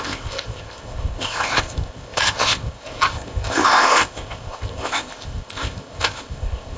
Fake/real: fake